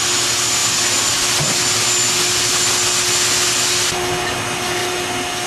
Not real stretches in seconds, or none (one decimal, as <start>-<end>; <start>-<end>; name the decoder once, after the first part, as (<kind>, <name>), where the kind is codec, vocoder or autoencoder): none